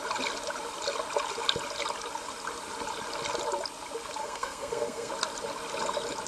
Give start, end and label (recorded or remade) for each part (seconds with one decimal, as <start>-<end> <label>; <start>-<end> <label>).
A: 0.0-4.2 recorded; 4.2-5.1 remade; 5.1-6.3 recorded